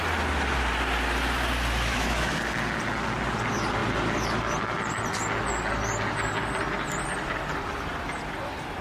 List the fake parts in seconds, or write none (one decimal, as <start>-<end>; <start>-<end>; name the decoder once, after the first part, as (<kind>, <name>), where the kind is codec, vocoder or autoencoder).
1.9-2.4 (autoencoder, DAC-VAE)